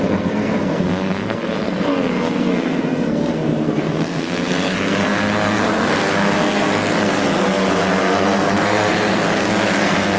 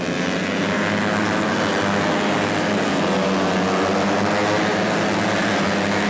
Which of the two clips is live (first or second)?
second